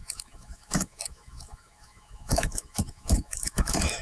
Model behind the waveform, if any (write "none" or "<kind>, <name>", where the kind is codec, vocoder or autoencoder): autoencoder, DAC-VAE